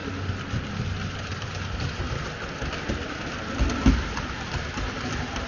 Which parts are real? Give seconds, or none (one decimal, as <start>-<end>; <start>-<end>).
0.0-5.5